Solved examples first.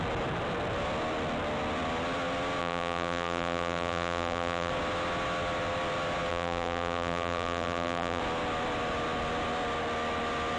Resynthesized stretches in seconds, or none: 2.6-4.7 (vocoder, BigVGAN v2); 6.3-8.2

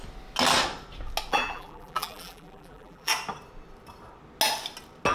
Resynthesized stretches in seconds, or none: 1.3-3.1 (vocoder, BigVGAN v2)